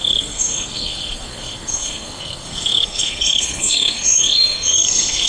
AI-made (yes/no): yes